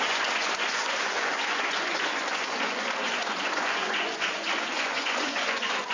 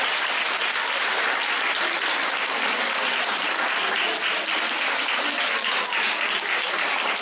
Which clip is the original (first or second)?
second